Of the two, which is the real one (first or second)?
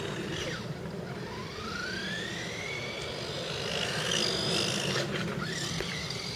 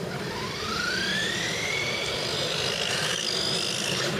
first